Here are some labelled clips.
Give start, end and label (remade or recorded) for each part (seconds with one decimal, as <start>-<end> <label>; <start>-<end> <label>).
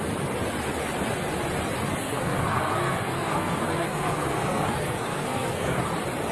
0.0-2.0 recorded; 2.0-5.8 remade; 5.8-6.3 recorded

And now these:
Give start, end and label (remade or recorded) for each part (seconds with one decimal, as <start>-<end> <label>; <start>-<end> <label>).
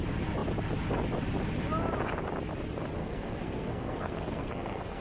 0.0-3.0 recorded; 3.0-5.0 remade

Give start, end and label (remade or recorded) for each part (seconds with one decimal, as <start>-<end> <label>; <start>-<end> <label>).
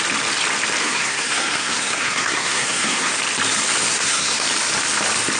0.0-0.8 recorded; 0.8-3.1 remade; 3.1-3.9 recorded; 3.9-4.4 remade; 4.4-5.4 recorded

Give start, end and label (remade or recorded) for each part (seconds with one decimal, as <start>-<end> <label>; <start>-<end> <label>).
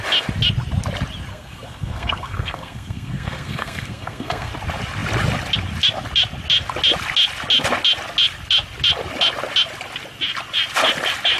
0.0-1.3 recorded; 1.3-4.5 remade; 4.5-11.4 recorded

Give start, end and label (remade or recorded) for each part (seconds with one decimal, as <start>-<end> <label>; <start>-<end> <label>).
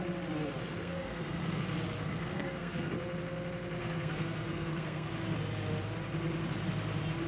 0.0-0.8 recorded; 0.8-1.6 remade; 1.6-2.1 recorded; 2.1-2.9 remade; 2.9-3.8 recorded; 3.8-5.1 remade; 5.1-7.3 recorded